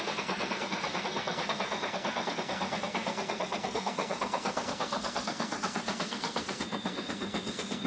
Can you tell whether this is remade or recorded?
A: remade